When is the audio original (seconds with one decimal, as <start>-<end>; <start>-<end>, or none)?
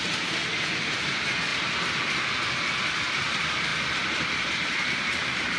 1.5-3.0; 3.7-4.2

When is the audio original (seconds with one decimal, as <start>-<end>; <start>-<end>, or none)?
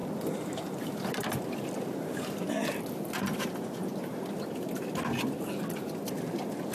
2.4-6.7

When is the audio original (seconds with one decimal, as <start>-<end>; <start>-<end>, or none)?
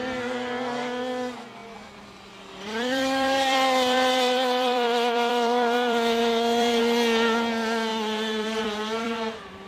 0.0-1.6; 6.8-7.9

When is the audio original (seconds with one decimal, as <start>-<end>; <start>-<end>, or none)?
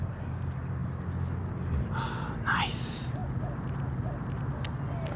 0.0-5.2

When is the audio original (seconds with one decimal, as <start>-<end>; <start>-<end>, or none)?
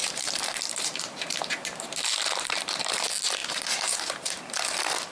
2.9-3.4; 4.5-5.1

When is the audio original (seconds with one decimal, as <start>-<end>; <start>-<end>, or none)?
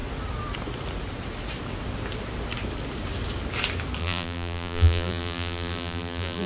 0.0-4.0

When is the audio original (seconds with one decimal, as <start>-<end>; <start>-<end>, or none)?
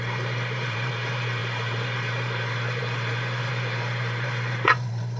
none